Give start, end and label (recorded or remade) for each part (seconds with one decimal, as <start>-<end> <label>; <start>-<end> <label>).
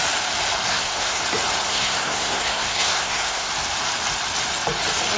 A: 0.0-0.7 recorded; 0.7-1.2 remade; 1.2-1.7 recorded; 1.7-3.5 remade; 3.5-5.2 recorded